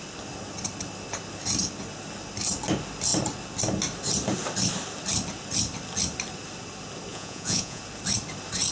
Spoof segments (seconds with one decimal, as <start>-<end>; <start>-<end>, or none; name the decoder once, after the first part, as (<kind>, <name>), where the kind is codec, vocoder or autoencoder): 7.1-7.8 (vocoder, Vocos)